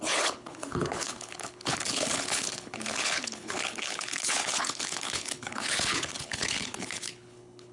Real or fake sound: fake